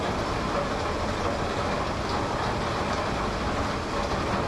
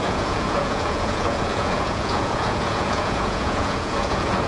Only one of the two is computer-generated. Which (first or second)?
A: second